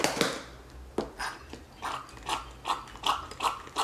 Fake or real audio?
real